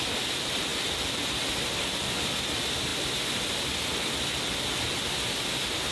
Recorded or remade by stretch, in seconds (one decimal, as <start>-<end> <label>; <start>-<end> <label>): 0.0-5.9 recorded